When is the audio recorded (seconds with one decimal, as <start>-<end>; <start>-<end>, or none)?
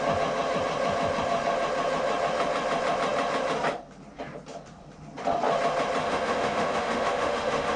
0.0-6.0